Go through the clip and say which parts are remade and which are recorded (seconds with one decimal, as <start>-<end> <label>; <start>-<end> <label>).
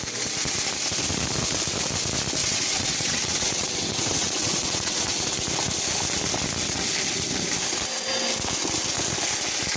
0.0-2.4 recorded; 2.4-5.2 remade; 5.2-9.8 recorded